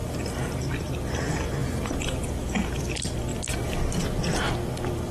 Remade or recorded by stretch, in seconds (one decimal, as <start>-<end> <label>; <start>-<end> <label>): 0.0-0.6 remade; 0.6-1.6 recorded; 1.6-2.4 remade; 2.4-3.3 recorded; 3.3-3.8 remade; 3.8-5.1 recorded